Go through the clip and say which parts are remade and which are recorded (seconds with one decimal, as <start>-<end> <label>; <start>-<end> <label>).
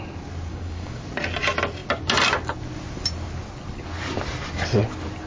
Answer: 0.0-0.5 recorded; 0.5-1.0 remade; 1.0-5.3 recorded